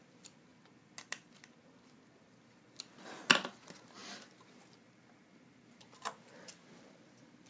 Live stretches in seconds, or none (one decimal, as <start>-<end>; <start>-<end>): 0.0-7.5